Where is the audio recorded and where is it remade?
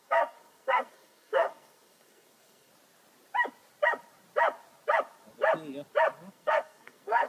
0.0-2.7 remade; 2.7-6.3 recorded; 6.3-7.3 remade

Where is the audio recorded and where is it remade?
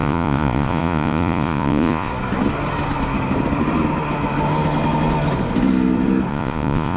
0.0-2.1 remade; 2.1-6.3 recorded; 6.3-7.0 remade